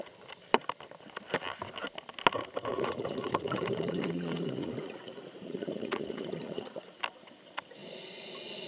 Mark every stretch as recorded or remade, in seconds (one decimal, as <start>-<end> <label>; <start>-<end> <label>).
0.0-2.7 recorded; 2.7-6.9 remade; 6.9-8.7 recorded

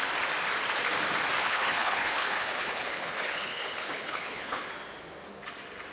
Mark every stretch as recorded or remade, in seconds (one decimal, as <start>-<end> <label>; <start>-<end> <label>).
0.0-1.4 recorded; 1.4-4.7 remade; 4.7-5.9 recorded

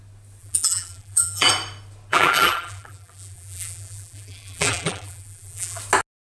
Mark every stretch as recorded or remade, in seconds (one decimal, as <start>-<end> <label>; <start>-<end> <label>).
0.0-0.4 recorded; 0.4-1.5 remade; 1.5-2.1 recorded; 2.1-5.8 remade; 5.8-6.2 recorded

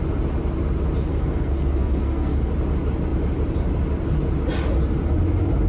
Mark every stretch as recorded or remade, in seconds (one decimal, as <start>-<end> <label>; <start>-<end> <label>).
0.0-1.1 recorded; 1.1-2.5 remade; 2.5-5.7 recorded